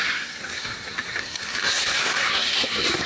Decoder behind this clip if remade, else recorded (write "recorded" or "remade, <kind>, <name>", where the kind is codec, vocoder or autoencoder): remade, codec, SNAC